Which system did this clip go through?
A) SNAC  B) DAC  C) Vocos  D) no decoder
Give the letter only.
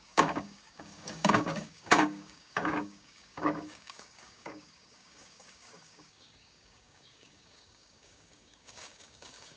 B